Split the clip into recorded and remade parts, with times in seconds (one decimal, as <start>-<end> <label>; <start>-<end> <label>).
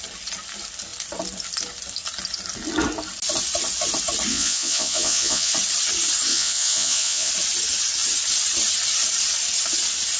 0.0-4.3 recorded; 4.3-5.5 remade; 5.5-6.3 recorded; 6.3-7.3 remade; 7.3-10.2 recorded